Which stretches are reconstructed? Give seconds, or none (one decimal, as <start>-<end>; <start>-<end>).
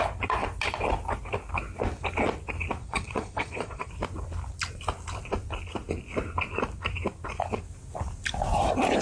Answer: 2.8-3.9